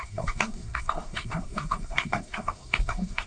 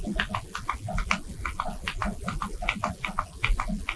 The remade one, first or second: first